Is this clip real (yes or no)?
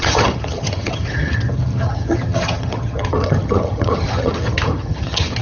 no